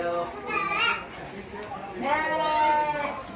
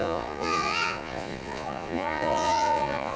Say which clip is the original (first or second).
first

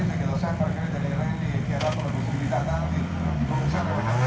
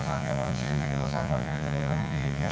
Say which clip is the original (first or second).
first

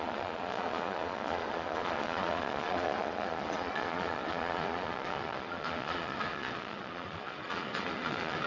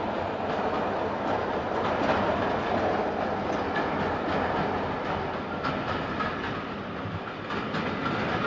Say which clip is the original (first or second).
second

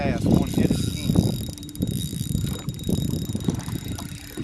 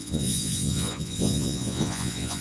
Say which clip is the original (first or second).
first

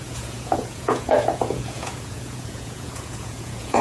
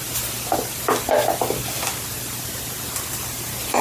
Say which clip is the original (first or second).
second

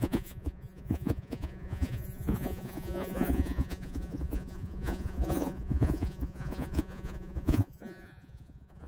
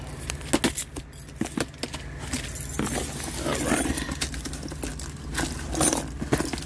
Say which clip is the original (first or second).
second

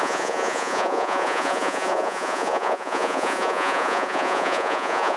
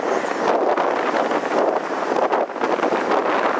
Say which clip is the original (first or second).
second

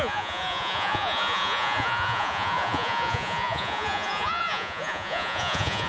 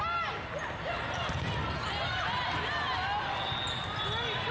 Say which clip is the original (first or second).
second